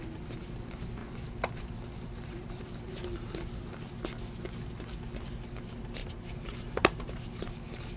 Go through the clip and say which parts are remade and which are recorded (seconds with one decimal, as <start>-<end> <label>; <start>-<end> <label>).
0.0-6.0 recorded; 6.0-7.5 remade; 7.5-8.0 recorded